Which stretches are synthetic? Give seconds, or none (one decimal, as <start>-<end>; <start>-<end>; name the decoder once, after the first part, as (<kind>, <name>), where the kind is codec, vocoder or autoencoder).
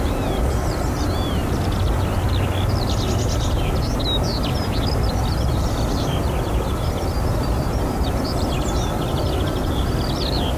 0.0-1.4 (vocoder, BigVGAN v2); 5.2-10.6